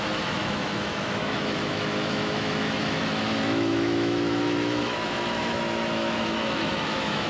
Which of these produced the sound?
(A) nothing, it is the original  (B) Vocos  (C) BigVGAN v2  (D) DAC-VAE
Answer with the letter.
D